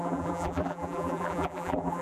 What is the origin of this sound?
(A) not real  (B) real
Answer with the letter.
A